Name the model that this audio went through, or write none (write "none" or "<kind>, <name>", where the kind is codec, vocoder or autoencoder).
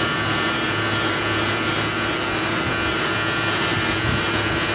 none